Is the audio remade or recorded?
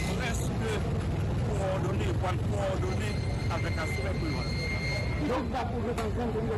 recorded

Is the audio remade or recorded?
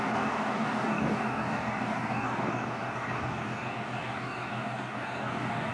remade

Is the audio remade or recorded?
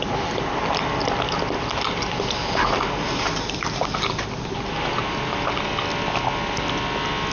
recorded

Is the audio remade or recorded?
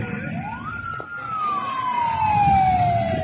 recorded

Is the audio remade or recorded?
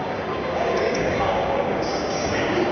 remade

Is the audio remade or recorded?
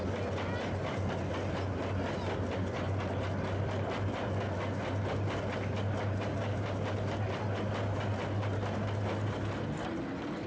recorded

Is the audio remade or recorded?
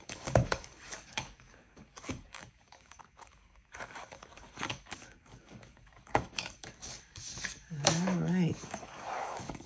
remade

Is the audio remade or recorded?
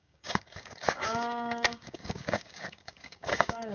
remade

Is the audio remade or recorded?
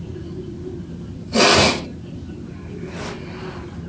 recorded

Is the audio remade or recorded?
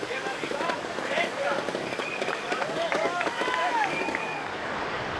remade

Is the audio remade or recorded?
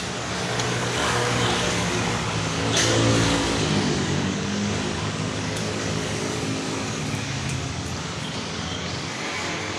remade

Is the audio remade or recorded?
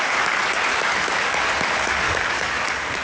remade